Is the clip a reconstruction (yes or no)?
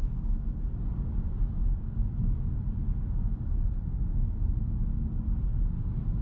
no